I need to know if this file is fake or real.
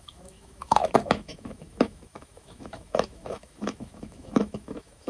fake